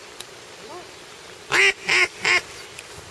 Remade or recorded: recorded